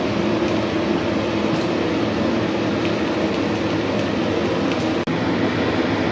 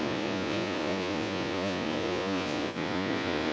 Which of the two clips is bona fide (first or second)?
first